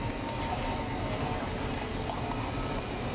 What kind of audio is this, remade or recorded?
recorded